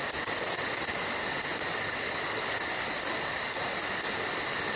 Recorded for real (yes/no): yes